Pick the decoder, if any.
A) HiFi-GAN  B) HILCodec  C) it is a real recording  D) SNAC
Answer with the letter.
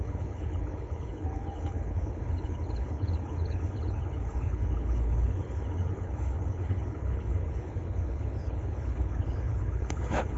B